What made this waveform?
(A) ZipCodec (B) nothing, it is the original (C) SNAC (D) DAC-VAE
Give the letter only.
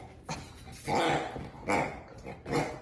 B